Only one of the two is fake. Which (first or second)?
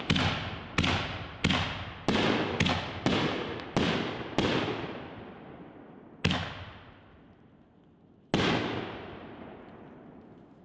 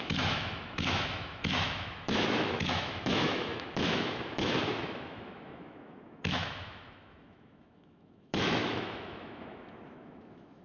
second